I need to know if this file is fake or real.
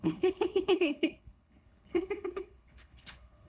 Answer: fake